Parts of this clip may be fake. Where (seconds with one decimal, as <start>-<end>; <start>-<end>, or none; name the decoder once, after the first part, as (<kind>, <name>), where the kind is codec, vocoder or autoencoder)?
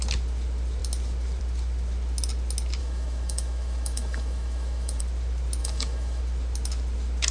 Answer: 2.8-5.0 (autoencoder, DAC-VAE); 5.6-6.2